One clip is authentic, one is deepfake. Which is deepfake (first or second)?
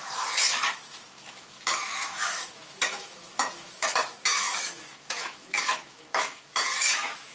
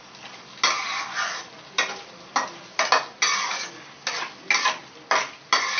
first